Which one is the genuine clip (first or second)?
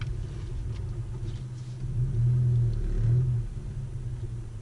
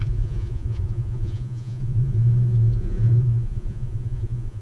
first